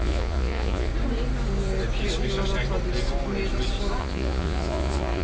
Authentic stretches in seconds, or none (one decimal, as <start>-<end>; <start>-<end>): 0.9-4.0